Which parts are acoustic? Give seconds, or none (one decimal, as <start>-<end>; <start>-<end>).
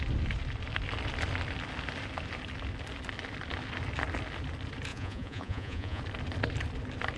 0.0-4.9; 6.0-7.2